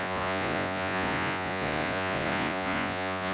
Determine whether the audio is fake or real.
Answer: fake